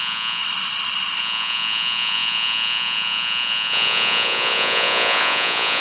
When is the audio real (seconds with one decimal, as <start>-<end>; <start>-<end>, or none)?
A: 0.4-1.2